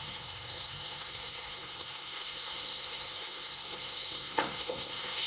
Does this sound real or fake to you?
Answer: fake